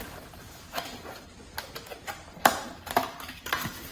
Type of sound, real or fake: fake